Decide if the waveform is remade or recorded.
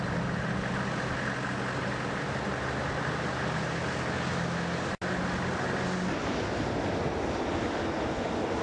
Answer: recorded